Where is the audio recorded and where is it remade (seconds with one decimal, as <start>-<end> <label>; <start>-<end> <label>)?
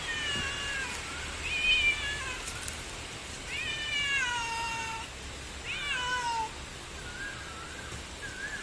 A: 0.0-3.2 recorded; 3.2-5.0 remade; 5.0-8.6 recorded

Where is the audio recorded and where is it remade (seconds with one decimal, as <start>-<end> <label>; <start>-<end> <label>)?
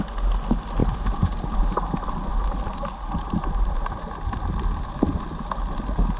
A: 0.0-0.8 recorded; 0.8-1.8 remade; 1.8-6.2 recorded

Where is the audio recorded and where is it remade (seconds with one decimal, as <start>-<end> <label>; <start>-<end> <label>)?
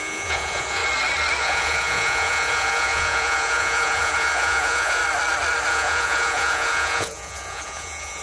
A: 0.0-0.8 remade; 0.8-1.4 recorded; 1.4-5.0 remade; 5.0-5.7 recorded; 5.7-8.2 remade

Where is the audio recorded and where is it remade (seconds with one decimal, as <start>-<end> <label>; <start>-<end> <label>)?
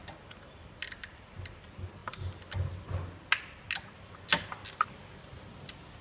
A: 0.0-6.0 recorded